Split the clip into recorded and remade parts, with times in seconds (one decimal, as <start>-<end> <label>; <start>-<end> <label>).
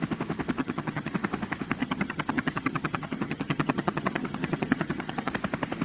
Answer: 0.0-0.6 recorded; 0.6-1.1 remade; 1.1-1.8 recorded; 1.8-5.3 remade; 5.3-5.8 recorded